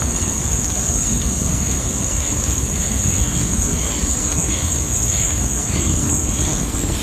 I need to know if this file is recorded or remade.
remade